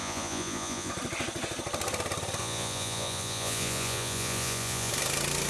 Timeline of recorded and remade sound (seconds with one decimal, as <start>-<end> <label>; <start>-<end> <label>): 0.0-0.9 remade; 0.9-2.4 recorded; 2.4-4.9 remade; 4.9-5.5 recorded